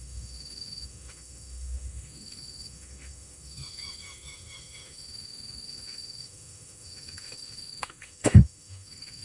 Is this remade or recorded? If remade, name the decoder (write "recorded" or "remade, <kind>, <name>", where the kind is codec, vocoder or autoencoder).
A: remade, autoencoder, DAC-VAE